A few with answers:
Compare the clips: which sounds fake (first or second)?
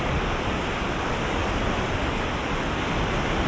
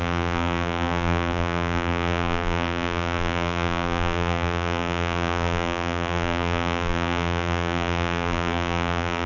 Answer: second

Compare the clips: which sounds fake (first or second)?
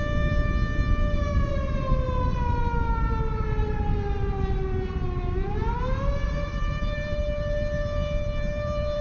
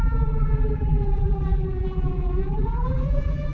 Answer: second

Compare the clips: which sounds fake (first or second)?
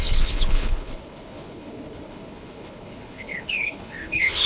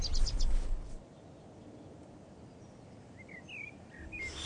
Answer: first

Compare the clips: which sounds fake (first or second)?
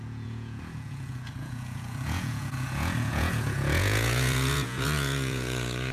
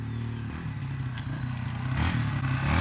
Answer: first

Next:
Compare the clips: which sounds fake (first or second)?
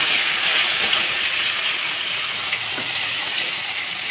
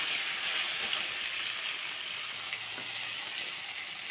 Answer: first